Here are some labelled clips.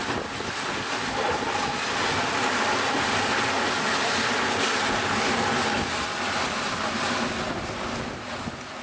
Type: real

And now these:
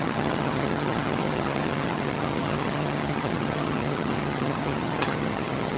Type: fake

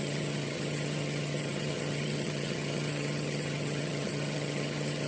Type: fake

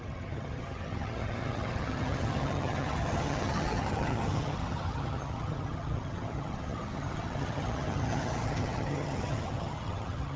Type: fake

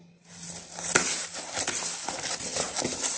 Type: real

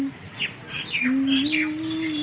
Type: real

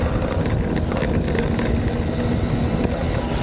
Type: real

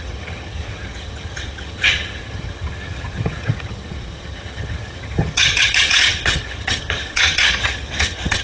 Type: fake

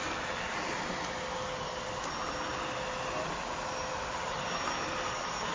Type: real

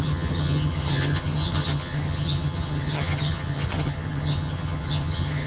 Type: fake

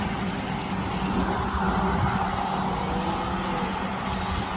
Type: real